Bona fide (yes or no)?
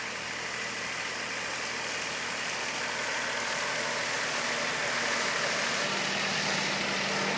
yes